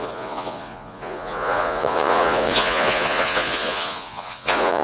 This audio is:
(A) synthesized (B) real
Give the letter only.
A